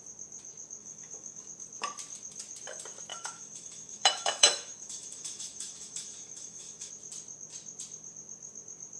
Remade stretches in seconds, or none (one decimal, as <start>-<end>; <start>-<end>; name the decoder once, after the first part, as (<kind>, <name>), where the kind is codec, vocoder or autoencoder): 0.8-1.4 (autoencoder, DAC-VAE); 3.1-6.9